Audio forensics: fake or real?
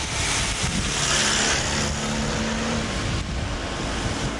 real